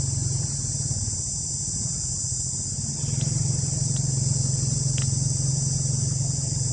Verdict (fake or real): real